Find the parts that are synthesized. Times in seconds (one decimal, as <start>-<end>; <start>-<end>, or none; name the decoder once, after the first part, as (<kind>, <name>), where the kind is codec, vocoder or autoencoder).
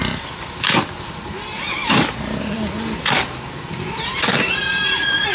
none